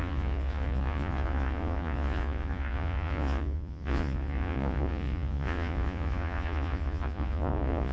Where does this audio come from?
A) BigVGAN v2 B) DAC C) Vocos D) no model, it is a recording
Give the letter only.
C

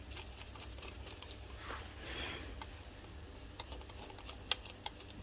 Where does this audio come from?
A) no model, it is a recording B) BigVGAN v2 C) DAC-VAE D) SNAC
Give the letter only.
A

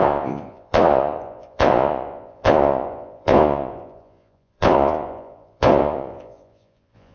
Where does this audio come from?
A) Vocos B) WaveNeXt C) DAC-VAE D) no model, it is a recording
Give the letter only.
A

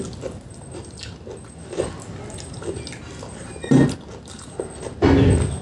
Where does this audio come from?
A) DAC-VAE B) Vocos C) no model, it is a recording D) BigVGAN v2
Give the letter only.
C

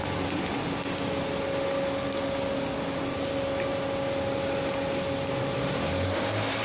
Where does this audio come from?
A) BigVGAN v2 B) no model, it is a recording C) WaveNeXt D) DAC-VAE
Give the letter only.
B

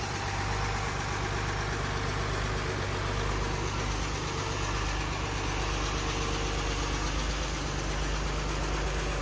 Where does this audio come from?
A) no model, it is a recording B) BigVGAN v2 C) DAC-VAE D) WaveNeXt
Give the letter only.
A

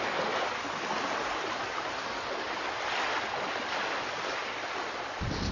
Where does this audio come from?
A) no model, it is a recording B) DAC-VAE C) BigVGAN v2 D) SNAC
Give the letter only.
A